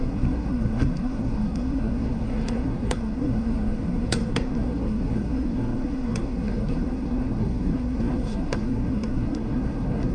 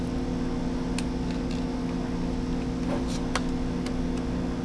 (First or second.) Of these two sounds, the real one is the second